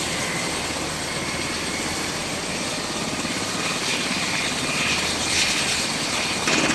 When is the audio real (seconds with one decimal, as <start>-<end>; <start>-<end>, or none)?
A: 0.0-6.7